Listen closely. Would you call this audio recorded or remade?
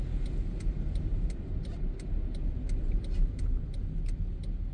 recorded